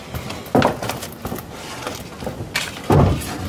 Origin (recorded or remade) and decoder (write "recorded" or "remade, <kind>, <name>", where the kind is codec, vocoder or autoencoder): recorded